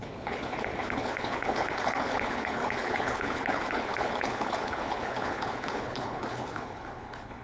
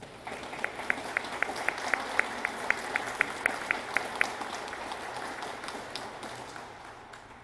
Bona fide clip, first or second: second